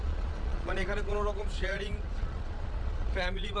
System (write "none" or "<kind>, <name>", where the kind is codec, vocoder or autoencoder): vocoder, Vocos